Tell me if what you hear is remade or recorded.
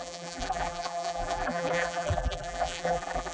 remade